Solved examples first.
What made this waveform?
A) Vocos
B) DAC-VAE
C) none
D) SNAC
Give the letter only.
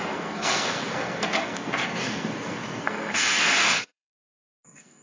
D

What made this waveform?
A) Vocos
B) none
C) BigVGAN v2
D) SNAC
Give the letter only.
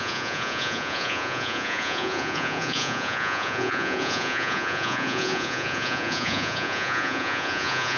A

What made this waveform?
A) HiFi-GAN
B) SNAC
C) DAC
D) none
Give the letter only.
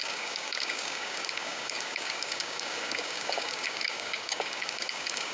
C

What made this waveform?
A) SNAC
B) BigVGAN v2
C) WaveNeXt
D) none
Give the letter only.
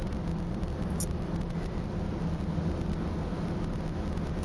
D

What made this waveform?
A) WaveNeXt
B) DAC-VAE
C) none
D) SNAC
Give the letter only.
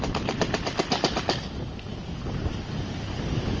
C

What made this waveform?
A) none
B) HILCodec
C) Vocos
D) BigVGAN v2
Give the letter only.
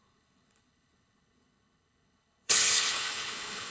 B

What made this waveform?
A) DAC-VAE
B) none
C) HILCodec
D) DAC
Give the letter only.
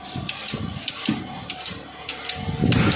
B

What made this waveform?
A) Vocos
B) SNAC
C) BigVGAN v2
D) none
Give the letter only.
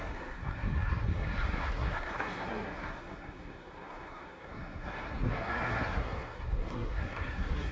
B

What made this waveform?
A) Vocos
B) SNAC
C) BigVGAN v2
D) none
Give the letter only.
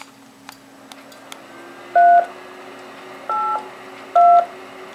D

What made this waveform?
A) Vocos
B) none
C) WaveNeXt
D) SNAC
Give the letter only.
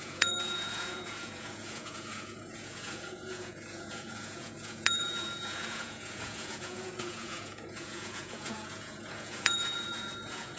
A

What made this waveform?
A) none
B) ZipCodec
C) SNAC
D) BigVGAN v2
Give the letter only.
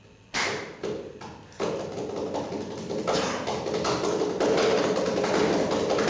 A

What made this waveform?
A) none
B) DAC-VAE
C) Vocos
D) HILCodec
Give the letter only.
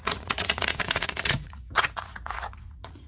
C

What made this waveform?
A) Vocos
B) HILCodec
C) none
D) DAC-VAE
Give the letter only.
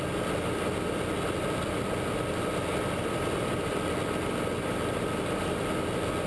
C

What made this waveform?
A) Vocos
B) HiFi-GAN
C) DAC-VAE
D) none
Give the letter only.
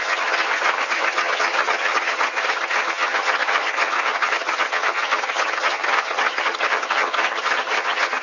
B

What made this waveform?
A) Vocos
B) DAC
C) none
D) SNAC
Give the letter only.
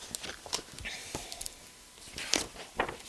C